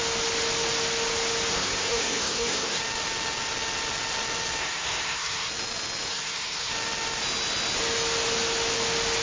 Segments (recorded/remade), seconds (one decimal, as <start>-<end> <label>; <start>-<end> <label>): 0.0-1.5 recorded; 1.5-2.8 remade; 2.8-4.6 recorded; 4.6-5.5 remade; 5.5-6.1 recorded; 6.1-6.7 remade; 6.7-9.2 recorded